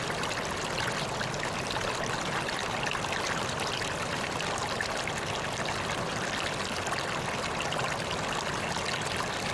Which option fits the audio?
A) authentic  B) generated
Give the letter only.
A